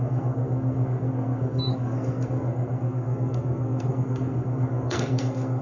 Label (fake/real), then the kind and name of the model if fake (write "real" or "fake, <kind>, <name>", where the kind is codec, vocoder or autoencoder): fake, codec, SNAC